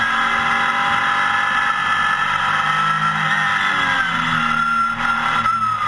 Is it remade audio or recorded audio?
recorded